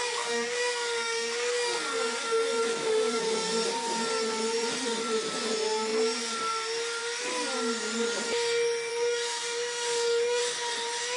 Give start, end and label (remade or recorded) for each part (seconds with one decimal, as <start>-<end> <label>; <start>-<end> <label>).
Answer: 0.0-3.5 remade; 3.5-8.9 recorded; 8.9-10.4 remade; 10.4-11.2 recorded